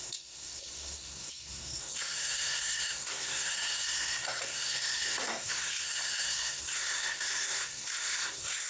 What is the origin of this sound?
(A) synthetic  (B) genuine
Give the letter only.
A